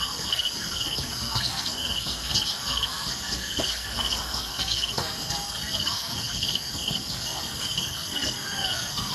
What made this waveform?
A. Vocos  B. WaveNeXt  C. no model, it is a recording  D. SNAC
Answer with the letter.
D